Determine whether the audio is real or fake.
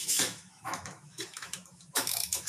fake